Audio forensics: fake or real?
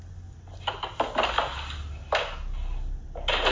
real